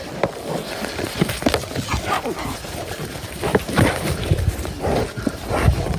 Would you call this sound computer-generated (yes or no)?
no